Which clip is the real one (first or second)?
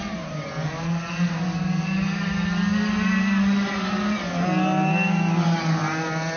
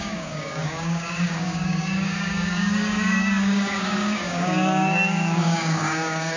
first